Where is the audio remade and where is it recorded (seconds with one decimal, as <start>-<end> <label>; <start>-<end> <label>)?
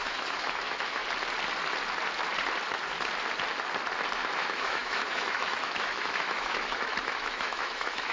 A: 0.0-1.0 remade; 1.0-4.1 recorded; 4.1-8.1 remade